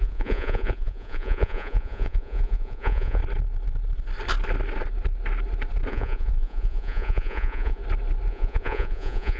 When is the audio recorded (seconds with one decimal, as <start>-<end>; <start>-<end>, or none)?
3.2-5.9; 7.8-8.3